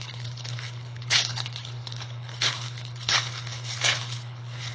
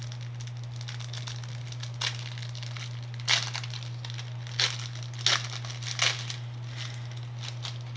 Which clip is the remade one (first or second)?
first